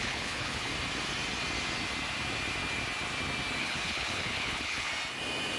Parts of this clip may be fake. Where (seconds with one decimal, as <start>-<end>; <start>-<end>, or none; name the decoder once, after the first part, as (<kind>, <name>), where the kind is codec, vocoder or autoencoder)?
0.0-0.7 (codec, HILCodec); 3.6-4.9